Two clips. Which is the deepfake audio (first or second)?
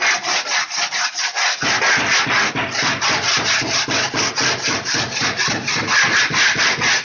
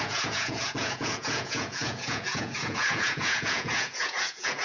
second